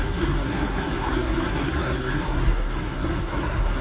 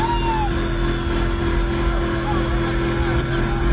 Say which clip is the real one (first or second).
second